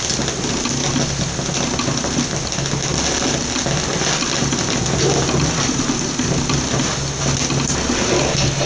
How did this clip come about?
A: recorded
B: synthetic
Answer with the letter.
A